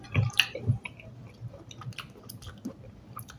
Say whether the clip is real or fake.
real